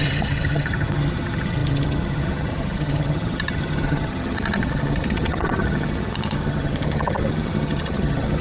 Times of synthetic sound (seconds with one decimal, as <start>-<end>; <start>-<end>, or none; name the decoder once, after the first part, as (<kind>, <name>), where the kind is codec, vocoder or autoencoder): 0.0-8.4 (vocoder, HiFi-GAN)